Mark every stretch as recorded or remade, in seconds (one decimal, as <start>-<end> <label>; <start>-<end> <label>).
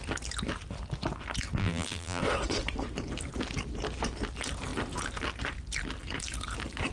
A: 0.0-1.6 recorded; 1.6-2.2 remade; 2.2-6.9 recorded